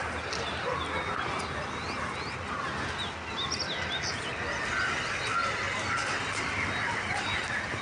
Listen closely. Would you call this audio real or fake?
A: real